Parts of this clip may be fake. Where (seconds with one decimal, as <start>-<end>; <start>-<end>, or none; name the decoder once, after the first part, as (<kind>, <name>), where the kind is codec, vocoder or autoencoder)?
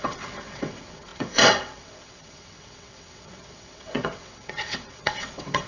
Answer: 0.0-5.7 (vocoder, WaveNeXt)